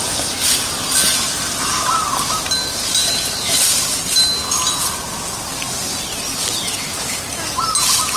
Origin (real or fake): real